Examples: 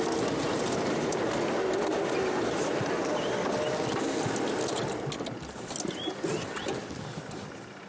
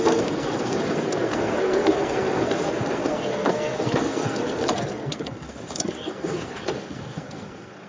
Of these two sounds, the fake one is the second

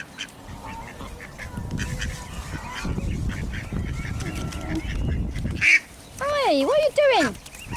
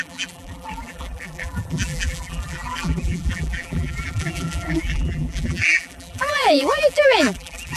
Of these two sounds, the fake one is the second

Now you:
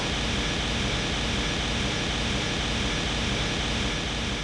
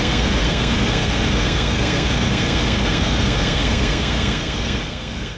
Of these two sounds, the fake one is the second